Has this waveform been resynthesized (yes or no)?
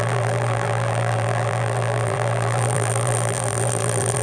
yes